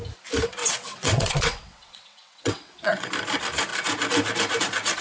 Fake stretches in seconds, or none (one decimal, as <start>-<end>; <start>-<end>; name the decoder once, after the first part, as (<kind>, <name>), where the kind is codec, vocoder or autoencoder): 0.6-3.1 (vocoder, WaveNeXt)